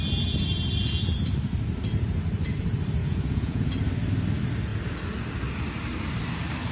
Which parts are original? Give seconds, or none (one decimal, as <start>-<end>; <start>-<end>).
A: 0.0-3.0; 3.7-6.7